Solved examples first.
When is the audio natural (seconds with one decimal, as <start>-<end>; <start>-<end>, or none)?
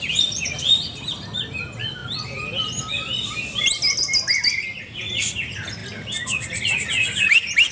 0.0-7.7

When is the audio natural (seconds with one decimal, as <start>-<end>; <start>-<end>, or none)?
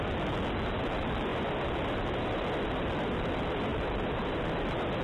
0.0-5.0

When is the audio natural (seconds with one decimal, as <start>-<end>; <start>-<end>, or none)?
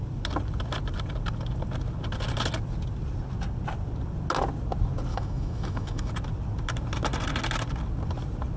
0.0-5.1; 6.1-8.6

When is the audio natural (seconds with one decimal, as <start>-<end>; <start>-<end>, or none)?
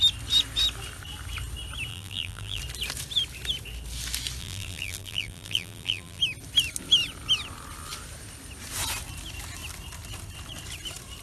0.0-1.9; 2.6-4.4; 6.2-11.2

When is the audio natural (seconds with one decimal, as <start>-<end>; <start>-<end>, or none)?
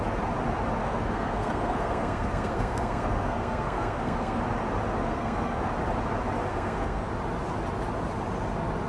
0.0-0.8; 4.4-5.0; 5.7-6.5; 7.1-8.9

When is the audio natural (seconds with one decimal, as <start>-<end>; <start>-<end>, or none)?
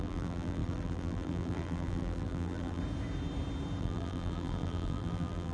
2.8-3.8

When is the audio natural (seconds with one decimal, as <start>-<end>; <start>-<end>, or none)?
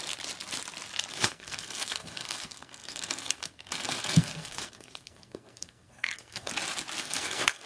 0.0-1.1; 6.5-7.0